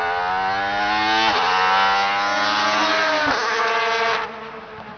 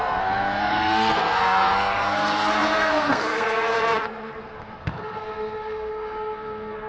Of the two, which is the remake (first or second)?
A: second